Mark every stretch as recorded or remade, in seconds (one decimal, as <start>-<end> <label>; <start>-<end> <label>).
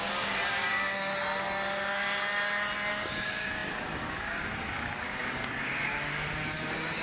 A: 0.0-1.1 remade; 1.1-2.9 recorded; 2.9-7.0 remade